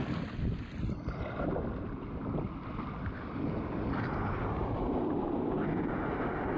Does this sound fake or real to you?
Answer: real